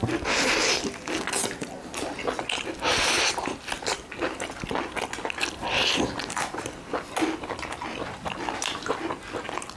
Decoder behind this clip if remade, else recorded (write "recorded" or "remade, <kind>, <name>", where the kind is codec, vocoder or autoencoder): recorded